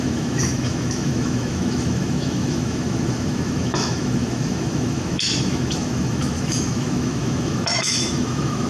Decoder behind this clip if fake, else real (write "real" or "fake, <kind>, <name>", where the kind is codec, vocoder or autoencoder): fake, autoencoder, DAC-VAE